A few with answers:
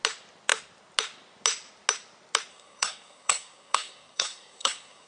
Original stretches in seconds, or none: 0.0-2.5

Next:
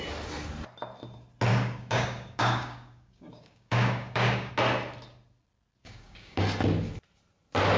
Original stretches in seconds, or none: 0.0-1.5; 4.5-5.8; 6.4-7.8

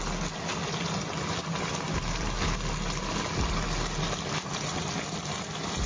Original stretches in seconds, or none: 0.0-1.4; 4.8-5.9